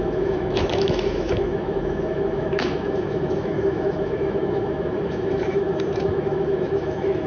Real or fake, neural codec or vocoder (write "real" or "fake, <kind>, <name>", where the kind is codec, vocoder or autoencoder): fake, autoencoder, DAC-VAE